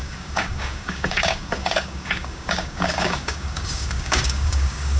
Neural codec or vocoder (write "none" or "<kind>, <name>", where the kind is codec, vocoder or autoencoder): codec, DAC